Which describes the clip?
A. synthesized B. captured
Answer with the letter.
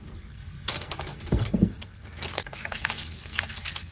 A